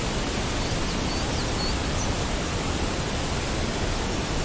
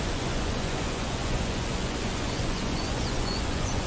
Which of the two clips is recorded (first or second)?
first